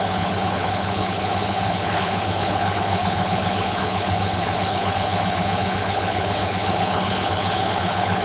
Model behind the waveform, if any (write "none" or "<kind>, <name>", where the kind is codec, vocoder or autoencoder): codec, HILCodec